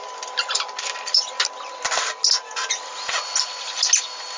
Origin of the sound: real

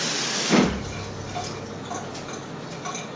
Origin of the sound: real